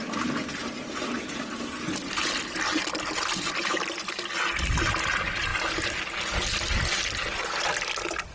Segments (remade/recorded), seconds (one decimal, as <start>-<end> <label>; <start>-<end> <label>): 0.0-8.3 recorded